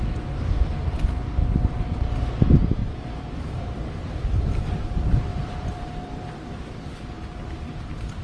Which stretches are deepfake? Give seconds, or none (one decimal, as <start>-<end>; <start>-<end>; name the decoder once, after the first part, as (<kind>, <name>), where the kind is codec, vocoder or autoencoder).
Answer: 2.8-4.8 (vocoder, BigVGAN v2); 5.3-6.9

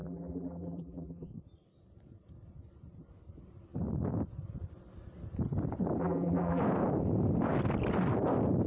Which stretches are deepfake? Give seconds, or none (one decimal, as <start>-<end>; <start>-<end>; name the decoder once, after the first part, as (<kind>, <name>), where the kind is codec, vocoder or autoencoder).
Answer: 0.0-1.3 (vocoder, BigVGAN v2); 6.0-6.6

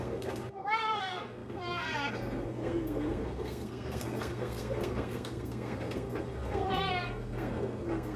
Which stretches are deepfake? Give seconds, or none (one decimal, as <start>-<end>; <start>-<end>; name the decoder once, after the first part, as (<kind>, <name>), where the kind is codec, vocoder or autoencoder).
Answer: 0.0-8.2 (codec, SNAC)

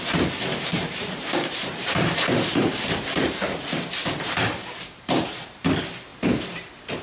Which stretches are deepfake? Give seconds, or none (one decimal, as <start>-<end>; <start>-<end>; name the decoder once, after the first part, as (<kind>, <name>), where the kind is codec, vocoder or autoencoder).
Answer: 0.8-3.6 (vocoder, BigVGAN v2); 4.0-5.3; 6.1-7.0

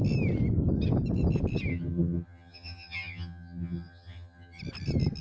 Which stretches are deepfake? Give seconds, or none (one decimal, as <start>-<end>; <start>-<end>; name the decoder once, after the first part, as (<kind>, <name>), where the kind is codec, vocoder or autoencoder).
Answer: 1.7-4.6 (vocoder, HiFi-GAN)

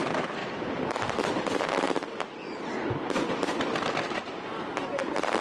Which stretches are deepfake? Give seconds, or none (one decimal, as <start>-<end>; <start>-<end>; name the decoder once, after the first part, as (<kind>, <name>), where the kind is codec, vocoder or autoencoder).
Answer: 0.0-4.2 (vocoder, BigVGAN v2); 5.0-5.4

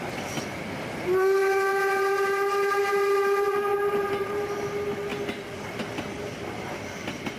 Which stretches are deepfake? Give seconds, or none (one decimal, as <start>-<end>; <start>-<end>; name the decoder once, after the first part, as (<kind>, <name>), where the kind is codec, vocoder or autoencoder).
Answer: none